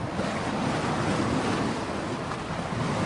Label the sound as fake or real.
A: real